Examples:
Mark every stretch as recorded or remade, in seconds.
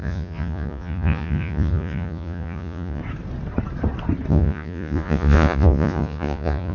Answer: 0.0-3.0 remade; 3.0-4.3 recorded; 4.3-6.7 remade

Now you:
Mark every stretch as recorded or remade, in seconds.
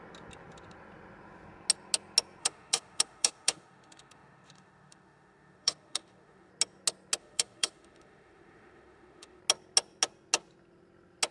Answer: 0.0-2.4 recorded; 2.4-6.5 remade; 6.5-7.2 recorded; 7.2-9.4 remade; 9.4-11.3 recorded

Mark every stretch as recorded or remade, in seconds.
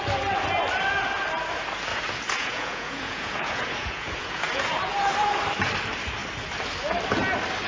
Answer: 0.0-1.9 recorded; 1.9-4.7 remade; 4.7-7.7 recorded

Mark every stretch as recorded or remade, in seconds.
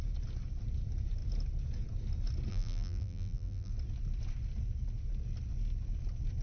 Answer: 0.0-2.5 recorded; 2.5-3.7 remade; 3.7-6.4 recorded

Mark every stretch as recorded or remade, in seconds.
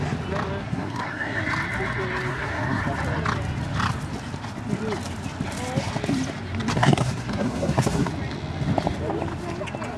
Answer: 0.0-0.6 recorded; 0.6-1.4 remade; 1.4-2.3 recorded; 2.3-2.8 remade; 2.8-6.7 recorded; 6.7-8.1 remade; 8.1-10.0 recorded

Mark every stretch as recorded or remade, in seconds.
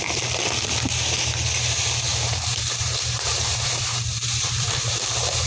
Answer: 0.0-2.1 recorded; 2.1-5.5 remade